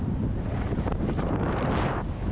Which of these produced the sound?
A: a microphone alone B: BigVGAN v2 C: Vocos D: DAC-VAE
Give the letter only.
B